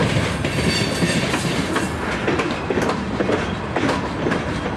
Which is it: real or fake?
real